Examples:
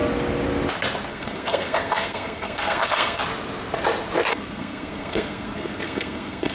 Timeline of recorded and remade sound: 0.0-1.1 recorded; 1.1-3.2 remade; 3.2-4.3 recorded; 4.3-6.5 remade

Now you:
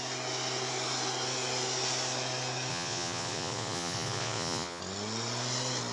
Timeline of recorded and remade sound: 0.0-2.7 recorded; 2.7-4.8 remade; 4.8-5.9 recorded

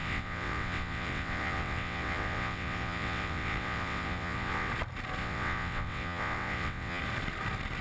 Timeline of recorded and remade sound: 0.0-4.7 remade; 4.7-5.2 recorded; 5.2-7.0 remade; 7.0-7.8 recorded

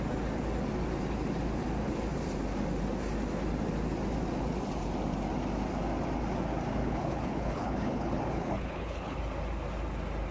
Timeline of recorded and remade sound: 0.0-6.8 recorded; 6.8-9.2 remade; 9.2-10.3 recorded

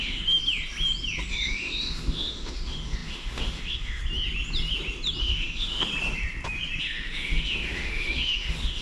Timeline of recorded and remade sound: 0.0-0.4 remade; 0.4-1.3 recorded; 1.3-4.0 remade; 4.0-5.2 recorded; 5.2-5.9 remade; 5.9-6.8 recorded; 6.8-8.8 remade

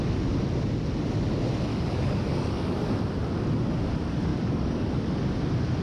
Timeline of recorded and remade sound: 0.0-1.7 recorded; 1.7-2.9 remade; 2.9-4.3 recorded; 4.3-4.9 remade; 4.9-5.8 recorded

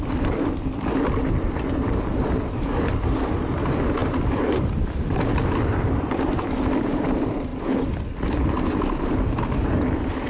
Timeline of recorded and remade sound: 0.0-7.5 remade; 7.5-9.4 recorded; 9.4-10.3 remade

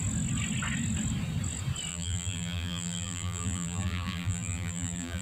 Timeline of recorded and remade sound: 0.0-1.9 recorded; 1.9-5.2 remade